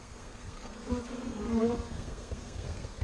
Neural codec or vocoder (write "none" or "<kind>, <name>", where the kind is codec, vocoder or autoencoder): codec, SNAC